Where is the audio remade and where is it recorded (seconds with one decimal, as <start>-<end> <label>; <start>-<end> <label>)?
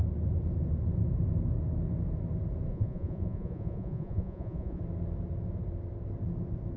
0.0-2.7 recorded; 2.7-4.8 remade; 4.8-6.8 recorded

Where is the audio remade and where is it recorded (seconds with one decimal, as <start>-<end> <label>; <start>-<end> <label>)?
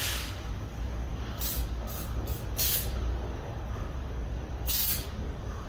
0.0-5.7 remade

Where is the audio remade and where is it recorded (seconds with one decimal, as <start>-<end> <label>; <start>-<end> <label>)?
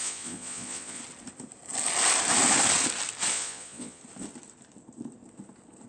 0.0-1.0 remade; 1.0-3.3 recorded; 3.3-4.0 remade; 4.0-5.9 recorded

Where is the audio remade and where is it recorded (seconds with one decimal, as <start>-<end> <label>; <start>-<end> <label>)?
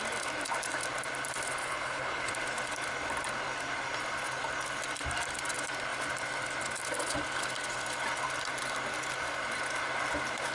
0.0-1.6 recorded; 1.6-2.3 remade; 2.3-10.5 recorded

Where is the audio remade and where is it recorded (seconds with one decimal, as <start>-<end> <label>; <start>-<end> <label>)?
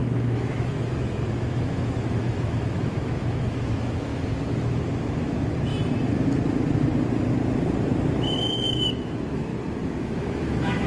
0.0-5.7 remade; 5.7-8.7 recorded; 8.7-9.5 remade; 9.5-10.0 recorded; 10.0-10.9 remade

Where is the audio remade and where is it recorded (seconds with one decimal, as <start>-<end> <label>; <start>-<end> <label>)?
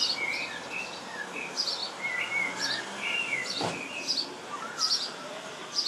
0.0-5.9 recorded